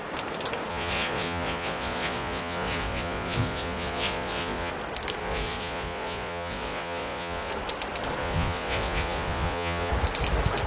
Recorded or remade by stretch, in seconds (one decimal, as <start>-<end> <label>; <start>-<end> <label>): 0.0-0.7 recorded; 0.7-4.7 remade; 4.7-5.2 recorded; 5.2-7.5 remade; 7.5-8.2 recorded; 8.2-9.9 remade; 9.9-10.7 recorded